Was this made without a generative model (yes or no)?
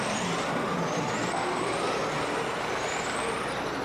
yes